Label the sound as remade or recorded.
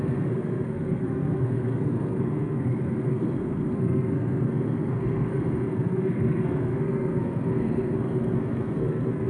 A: remade